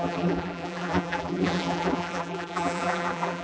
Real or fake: fake